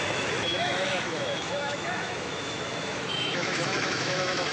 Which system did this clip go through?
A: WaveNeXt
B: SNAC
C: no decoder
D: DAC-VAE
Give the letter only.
D